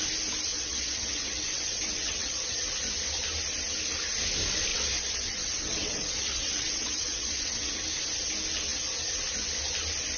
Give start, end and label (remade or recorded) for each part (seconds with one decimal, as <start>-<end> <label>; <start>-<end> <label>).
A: 0.0-0.5 recorded; 0.5-2.6 remade; 2.6-4.7 recorded; 4.7-7.7 remade; 7.7-10.2 recorded